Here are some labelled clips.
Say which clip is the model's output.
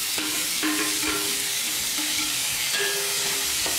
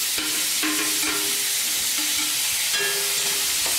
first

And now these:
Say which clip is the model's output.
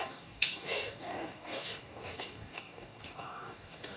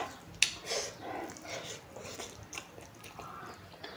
first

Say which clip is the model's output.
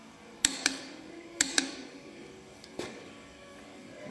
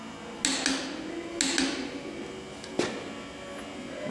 first